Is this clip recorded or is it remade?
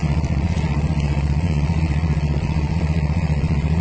remade